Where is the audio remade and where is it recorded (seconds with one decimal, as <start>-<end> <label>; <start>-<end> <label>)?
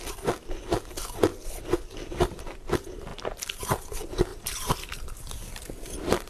0.0-1.3 recorded; 1.3-2.7 remade; 2.7-3.1 recorded; 3.1-3.6 remade; 3.6-4.3 recorded; 4.3-6.3 remade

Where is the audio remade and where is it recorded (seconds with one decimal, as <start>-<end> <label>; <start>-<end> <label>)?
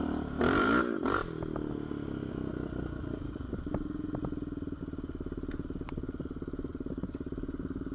0.0-1.2 remade; 1.2-3.0 recorded; 3.0-3.5 remade; 3.5-6.7 recorded; 6.7-7.9 remade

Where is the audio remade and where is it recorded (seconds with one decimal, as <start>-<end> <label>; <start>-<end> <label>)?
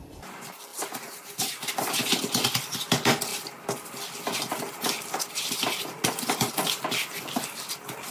0.0-8.1 recorded